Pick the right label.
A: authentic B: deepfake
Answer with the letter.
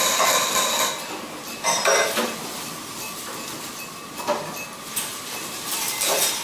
A